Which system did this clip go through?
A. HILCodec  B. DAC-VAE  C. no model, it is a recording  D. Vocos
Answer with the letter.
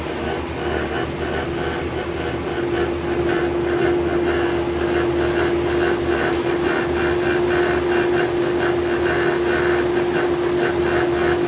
C